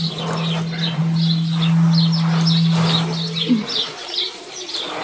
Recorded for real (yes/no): yes